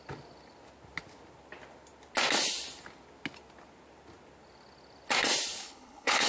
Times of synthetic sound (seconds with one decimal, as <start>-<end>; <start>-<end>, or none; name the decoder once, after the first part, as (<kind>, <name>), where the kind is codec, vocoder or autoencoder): 5.6-6.3 (codec, HILCodec)